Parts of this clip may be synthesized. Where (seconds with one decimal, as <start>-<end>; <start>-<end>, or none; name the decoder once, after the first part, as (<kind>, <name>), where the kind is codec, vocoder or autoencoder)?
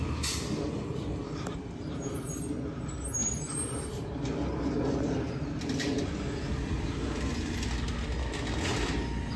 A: none